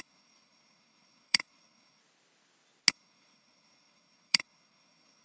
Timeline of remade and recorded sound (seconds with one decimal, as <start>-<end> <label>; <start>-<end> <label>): 0.0-2.0 remade; 2.0-2.9 recorded; 2.9-5.2 remade